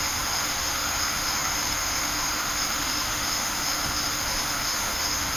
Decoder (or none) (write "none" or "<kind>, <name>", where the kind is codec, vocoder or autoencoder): autoencoder, DAC-VAE